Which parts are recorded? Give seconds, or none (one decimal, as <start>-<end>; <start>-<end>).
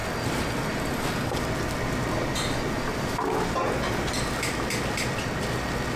0.0-6.0